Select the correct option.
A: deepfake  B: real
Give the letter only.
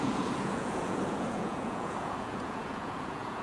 A